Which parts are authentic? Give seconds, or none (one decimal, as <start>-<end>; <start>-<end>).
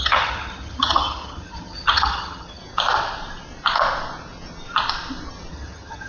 2.6-5.5